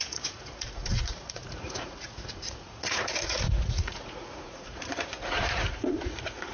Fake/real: fake